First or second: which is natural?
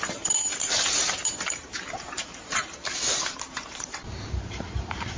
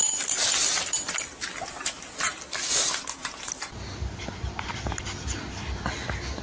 second